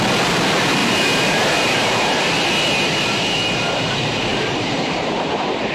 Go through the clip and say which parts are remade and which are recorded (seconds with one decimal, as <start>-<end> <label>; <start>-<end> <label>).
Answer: 0.0-0.8 recorded; 0.8-2.2 remade; 2.2-4.3 recorded; 4.3-5.7 remade